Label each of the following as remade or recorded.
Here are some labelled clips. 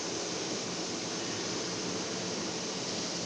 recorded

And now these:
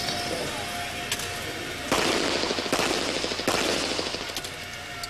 recorded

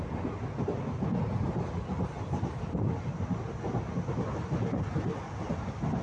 recorded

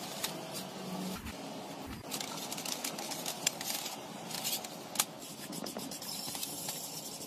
recorded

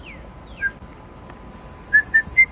recorded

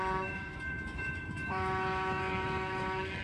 remade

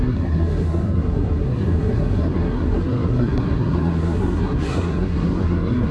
remade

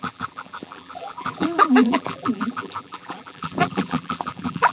remade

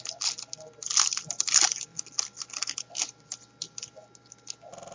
recorded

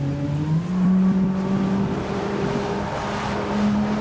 recorded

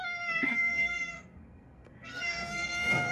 remade